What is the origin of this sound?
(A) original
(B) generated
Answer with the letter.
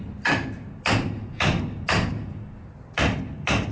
A